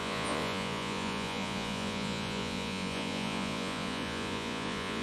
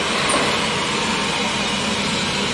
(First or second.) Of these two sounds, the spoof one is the first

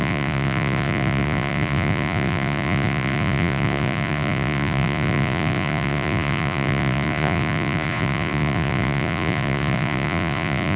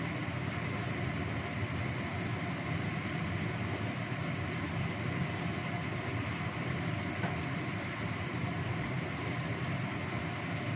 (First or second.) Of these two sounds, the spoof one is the first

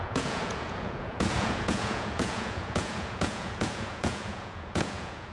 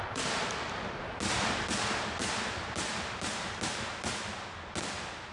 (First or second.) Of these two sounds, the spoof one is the first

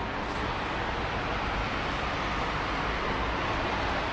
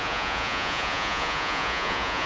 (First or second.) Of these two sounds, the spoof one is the second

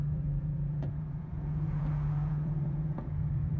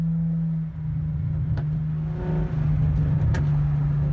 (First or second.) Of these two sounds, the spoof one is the first